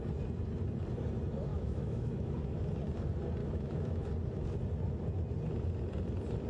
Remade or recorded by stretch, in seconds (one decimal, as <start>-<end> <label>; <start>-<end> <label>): 0.0-1.5 recorded; 1.5-2.7 remade; 2.7-3.4 recorded; 3.4-4.1 remade; 4.1-6.5 recorded